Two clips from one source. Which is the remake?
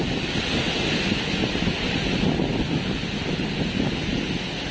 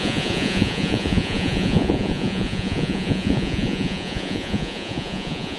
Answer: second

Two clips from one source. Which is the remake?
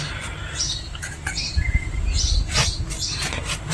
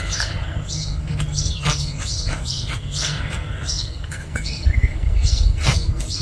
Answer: second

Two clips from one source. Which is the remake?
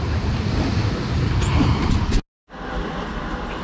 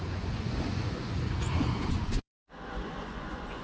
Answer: second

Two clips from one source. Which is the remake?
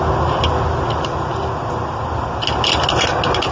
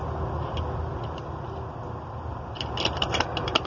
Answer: second